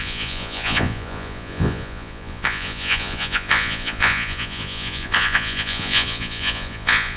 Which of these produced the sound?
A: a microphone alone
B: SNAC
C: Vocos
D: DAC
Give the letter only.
C